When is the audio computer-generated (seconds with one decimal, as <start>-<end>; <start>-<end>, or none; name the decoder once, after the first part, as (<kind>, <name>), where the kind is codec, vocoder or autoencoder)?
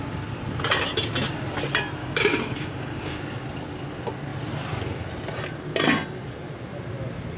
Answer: 2.0-3.2 (codec, DAC)